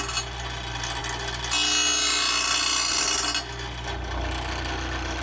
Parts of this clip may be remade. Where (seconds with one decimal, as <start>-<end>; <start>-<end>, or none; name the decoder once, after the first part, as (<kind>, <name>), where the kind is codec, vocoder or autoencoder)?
none